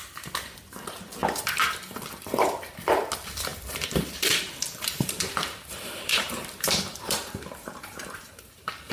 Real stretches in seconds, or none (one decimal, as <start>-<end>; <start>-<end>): 0.0-3.5